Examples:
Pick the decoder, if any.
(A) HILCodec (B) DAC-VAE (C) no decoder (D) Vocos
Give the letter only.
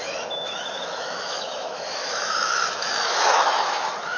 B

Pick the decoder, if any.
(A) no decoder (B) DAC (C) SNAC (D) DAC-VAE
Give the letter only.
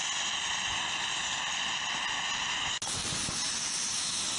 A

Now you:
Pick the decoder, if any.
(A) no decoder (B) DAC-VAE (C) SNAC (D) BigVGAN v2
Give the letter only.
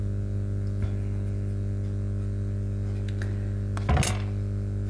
A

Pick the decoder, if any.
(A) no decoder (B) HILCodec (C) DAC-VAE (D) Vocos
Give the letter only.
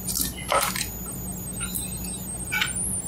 A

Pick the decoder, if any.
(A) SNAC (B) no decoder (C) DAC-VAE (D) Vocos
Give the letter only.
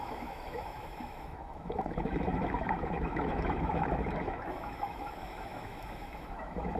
C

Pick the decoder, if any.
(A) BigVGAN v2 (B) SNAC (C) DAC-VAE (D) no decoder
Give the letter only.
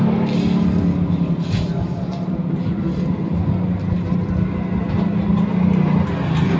D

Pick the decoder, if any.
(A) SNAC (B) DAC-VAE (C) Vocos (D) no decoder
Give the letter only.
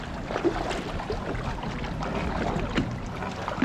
D